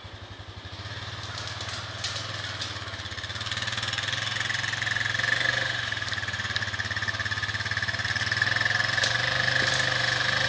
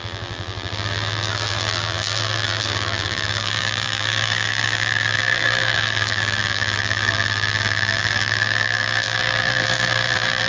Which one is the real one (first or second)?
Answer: first